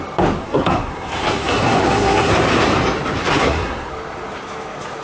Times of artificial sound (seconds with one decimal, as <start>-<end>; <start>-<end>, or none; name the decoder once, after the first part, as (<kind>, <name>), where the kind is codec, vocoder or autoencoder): 0.4-2.3 (codec, SNAC); 3.2-3.9